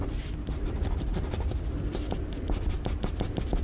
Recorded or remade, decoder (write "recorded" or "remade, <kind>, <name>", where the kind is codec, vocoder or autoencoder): remade, vocoder, BigVGAN v2